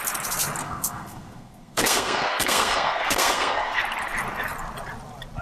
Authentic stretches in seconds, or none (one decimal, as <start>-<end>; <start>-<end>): 0.0-0.6; 3.8-5.4